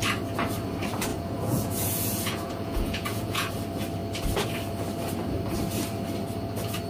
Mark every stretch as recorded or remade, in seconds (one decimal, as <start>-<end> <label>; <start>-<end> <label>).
0.0-1.1 recorded; 1.1-3.5 remade; 3.5-6.9 recorded